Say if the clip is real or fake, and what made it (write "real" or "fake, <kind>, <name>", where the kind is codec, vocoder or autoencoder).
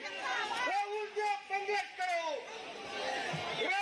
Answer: real